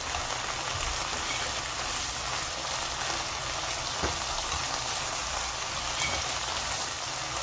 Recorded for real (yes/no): yes